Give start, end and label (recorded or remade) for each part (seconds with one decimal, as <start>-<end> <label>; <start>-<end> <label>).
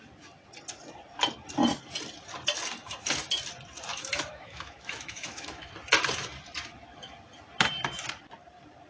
0.0-3.9 recorded; 3.9-5.7 remade; 5.7-8.9 recorded